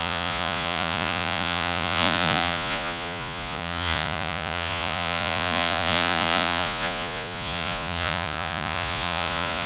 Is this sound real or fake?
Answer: fake